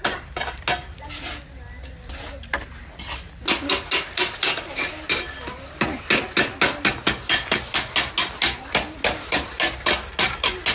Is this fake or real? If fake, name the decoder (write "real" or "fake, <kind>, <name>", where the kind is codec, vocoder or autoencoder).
real